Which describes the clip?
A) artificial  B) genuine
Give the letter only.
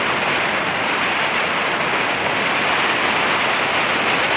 B